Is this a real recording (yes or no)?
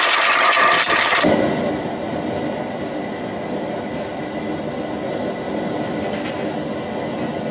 yes